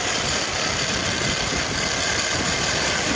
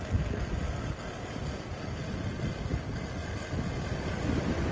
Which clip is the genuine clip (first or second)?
second